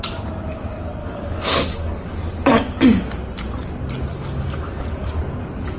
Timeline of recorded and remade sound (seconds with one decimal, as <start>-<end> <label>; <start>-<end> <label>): 0.0-1.0 recorded; 1.0-2.2 remade; 2.2-4.1 recorded; 4.1-5.1 remade; 5.1-5.8 recorded